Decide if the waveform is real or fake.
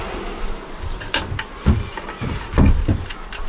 fake